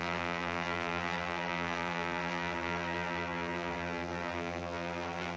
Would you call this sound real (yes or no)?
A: no